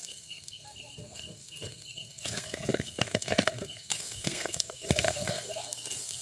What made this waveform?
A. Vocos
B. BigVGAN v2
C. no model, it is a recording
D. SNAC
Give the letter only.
D